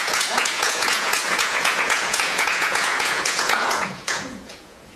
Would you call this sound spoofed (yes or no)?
yes